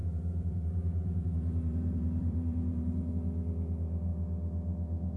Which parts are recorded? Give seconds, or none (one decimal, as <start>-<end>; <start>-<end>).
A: 3.1-5.2